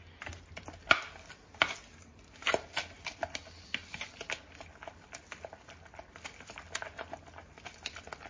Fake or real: real